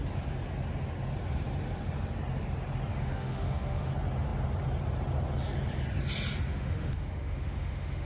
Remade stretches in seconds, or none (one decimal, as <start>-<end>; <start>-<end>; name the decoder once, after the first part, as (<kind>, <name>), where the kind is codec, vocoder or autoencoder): 2.9-3.9 (autoencoder, DAC-VAE); 6.5-8.1